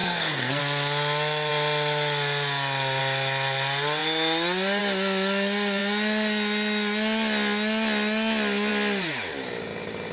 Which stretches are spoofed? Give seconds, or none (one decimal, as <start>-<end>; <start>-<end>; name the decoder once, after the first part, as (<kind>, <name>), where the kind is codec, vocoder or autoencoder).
0.0-0.6 (codec, SNAC)